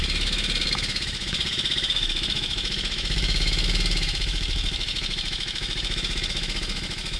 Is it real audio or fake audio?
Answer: fake